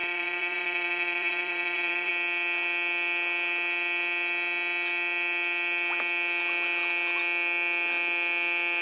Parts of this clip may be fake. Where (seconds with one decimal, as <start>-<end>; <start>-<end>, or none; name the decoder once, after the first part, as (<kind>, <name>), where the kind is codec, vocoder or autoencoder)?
0.0-2.1 (vocoder, Vocos)